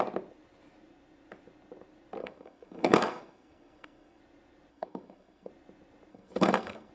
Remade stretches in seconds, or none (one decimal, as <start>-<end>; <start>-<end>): 2.2-4.2; 4.7-5.5; 6.1-6.9